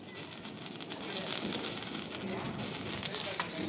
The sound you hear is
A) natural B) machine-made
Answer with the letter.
A